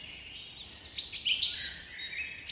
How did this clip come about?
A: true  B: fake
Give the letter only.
A